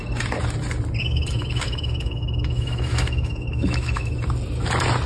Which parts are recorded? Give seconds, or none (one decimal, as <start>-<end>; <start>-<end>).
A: 0.0-1.0; 4.1-5.1